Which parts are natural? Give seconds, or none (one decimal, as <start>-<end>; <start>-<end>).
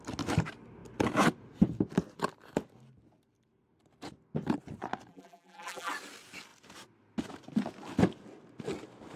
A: 0.0-5.1; 5.9-9.2